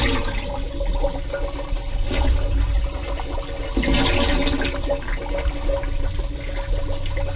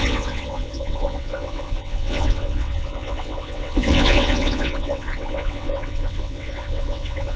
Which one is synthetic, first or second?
second